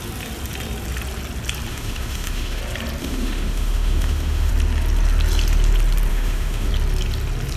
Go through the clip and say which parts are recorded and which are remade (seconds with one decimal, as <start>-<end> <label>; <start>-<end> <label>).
0.0-1.7 recorded; 1.7-2.6 remade; 2.6-3.0 recorded; 3.0-4.5 remade; 4.5-6.1 recorded; 6.1-6.7 remade; 6.7-7.6 recorded

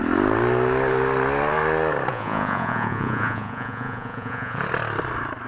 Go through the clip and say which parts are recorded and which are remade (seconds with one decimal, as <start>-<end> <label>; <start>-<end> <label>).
0.0-2.1 recorded; 2.1-4.6 remade; 4.6-5.5 recorded